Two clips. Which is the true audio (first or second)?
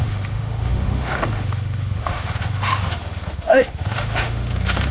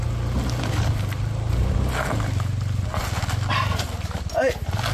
second